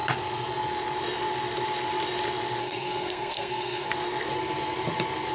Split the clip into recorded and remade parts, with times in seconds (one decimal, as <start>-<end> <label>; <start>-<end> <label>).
0.0-2.6 recorded; 2.6-3.9 remade; 3.9-5.3 recorded